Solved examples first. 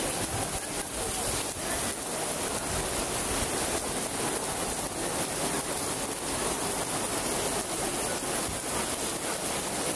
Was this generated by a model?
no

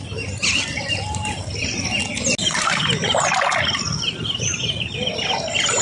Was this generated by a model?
no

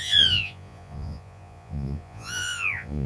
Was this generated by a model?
yes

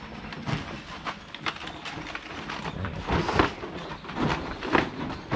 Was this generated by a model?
yes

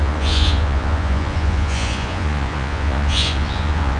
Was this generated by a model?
yes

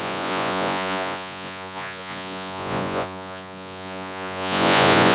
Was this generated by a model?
yes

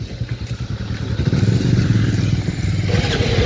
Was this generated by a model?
no